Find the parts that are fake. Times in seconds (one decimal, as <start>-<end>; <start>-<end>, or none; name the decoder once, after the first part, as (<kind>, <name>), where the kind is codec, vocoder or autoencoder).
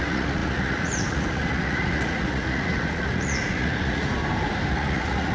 0.0-4.2 (vocoder, Vocos); 4.7-5.3